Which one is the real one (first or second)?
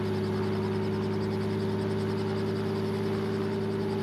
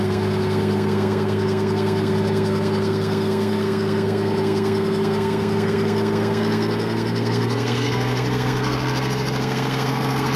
first